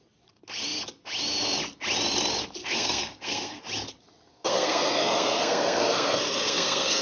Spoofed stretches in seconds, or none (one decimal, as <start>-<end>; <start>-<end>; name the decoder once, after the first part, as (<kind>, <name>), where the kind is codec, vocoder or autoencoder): 2.6-3.6 (codec, SNAC); 4.3-7.0